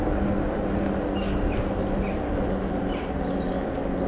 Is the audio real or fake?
real